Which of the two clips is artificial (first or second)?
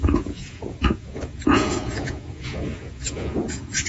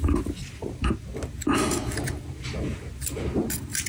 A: first